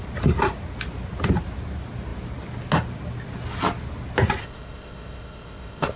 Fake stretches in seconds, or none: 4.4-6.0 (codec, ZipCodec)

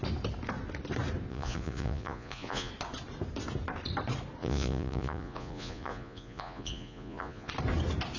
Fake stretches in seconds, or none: 1.3-2.7 (vocoder, Vocos); 4.4-7.5

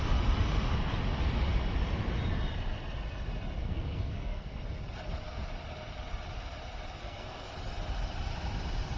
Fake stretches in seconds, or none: 3.6-4.6 (codec, SNAC); 7.0-7.5

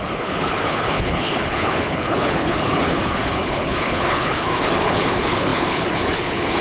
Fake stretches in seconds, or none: 0.0-6.6 (codec, HILCodec)

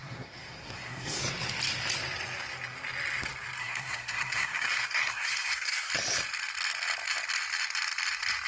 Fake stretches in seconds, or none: 0.0-1.2 (codec, SNAC); 3.6-5.9

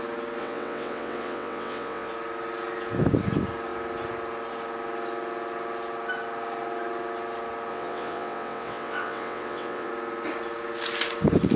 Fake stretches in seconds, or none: 0.4-2.1 (vocoder, WaveNeXt); 7.7-9.9